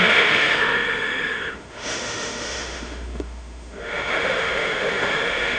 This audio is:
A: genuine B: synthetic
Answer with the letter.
B